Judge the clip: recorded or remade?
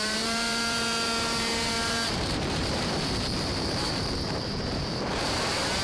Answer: remade